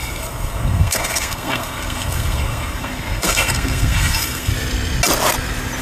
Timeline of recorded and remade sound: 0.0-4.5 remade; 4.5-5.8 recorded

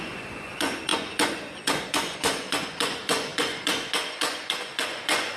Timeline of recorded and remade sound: 0.0-5.4 remade